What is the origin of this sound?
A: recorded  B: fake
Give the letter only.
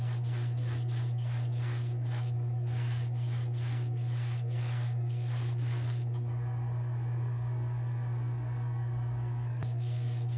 B